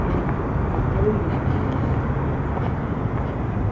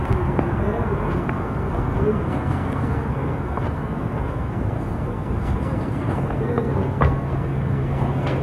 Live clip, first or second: first